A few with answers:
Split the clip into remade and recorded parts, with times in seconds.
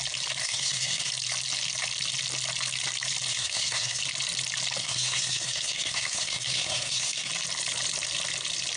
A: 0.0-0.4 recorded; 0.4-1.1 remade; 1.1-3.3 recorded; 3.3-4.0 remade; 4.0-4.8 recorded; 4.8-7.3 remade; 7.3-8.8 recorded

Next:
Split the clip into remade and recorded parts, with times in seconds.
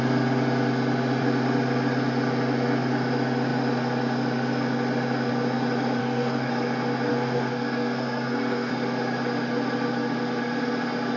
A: 0.0-6.0 recorded; 6.0-6.5 remade; 6.5-7.1 recorded; 7.1-8.7 remade; 8.7-11.2 recorded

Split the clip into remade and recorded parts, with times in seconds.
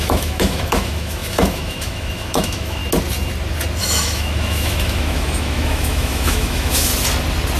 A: 0.0-2.8 remade; 2.8-3.8 recorded; 3.8-6.9 remade; 6.9-7.6 recorded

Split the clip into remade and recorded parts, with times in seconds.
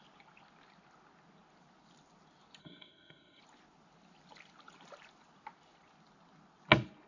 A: 0.0-2.6 recorded; 2.6-3.4 remade; 3.4-7.1 recorded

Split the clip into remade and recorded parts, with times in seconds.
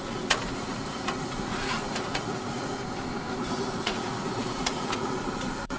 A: 0.0-2.7 remade; 2.7-3.4 recorded; 3.4-5.8 remade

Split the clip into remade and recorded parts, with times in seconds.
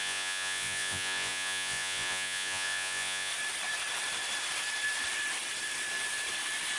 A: 0.0-3.3 remade; 3.3-6.8 recorded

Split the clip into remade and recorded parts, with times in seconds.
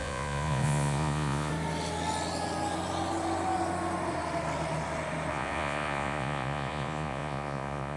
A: 0.0-1.5 remade; 1.5-5.3 recorded; 5.3-8.0 remade